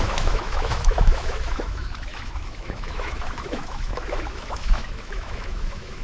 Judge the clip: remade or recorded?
remade